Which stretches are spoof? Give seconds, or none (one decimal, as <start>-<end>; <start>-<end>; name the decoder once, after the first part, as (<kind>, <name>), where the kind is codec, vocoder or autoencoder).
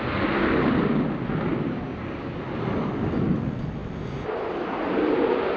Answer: none